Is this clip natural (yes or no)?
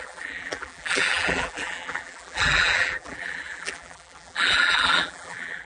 no